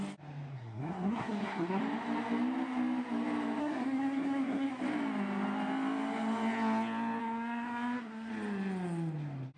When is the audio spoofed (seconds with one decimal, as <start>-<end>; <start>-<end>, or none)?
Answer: 0.5-1.8; 3.6-4.7; 7.2-8.3